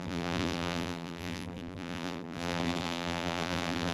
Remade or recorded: remade